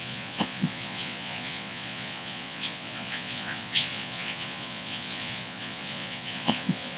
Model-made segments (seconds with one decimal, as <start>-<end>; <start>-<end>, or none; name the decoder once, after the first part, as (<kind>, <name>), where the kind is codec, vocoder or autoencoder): 0.0-7.0 (vocoder, Vocos)